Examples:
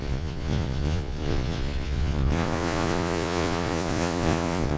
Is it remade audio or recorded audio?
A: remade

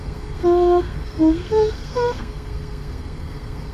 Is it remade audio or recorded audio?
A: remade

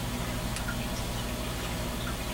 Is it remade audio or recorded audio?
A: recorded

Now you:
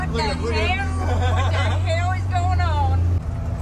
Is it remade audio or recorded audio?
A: recorded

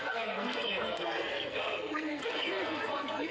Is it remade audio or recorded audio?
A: remade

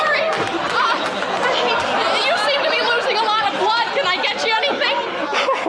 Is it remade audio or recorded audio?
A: recorded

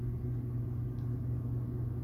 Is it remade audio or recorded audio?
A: recorded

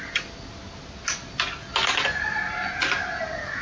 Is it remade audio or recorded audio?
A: recorded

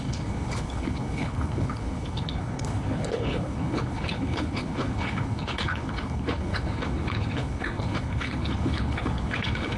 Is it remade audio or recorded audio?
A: remade